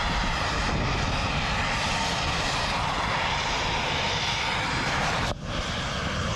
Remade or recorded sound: remade